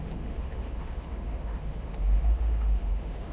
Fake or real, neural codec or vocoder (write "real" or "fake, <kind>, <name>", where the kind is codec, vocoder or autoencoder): fake, autoencoder, DAC-VAE